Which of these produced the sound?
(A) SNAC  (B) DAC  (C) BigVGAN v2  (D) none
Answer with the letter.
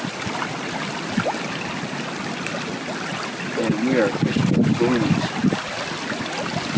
D